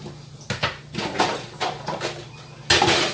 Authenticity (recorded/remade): recorded